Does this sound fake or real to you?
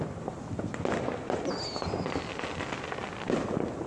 real